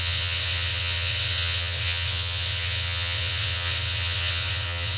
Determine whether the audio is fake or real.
fake